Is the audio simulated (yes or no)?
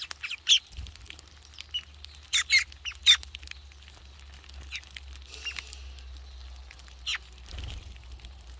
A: no